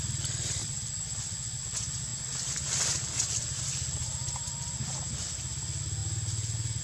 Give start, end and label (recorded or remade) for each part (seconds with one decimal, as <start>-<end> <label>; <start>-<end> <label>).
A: 0.0-6.8 recorded